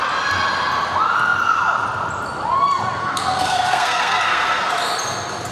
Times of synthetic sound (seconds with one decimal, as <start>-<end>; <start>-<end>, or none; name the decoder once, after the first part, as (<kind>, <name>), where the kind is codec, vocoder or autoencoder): 3.0-4.7 (codec, SNAC)